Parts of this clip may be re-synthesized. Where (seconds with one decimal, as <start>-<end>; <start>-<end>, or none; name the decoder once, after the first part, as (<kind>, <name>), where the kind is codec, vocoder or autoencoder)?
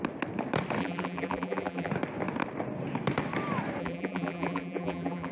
0.8-1.9 (vocoder, BigVGAN v2); 3.8-5.3